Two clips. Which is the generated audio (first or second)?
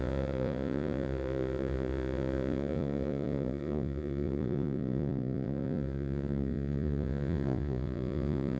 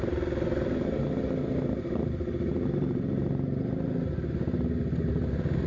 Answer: first